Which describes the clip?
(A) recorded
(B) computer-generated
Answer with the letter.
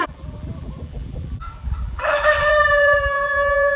B